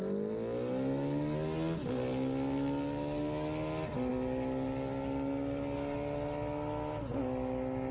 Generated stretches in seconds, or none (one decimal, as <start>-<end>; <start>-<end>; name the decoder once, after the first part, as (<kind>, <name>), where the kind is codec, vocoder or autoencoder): none